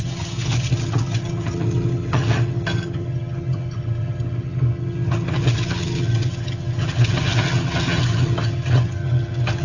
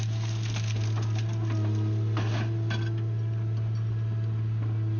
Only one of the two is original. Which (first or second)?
second